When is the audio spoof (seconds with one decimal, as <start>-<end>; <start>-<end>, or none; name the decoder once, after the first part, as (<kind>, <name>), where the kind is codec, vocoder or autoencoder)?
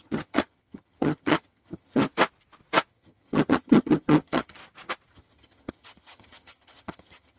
0.0-2.0 (vocoder, HiFi-GAN); 2.9-4.6; 5.1-7.4